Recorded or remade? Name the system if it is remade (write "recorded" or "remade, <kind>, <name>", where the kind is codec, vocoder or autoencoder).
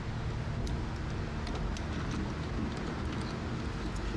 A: recorded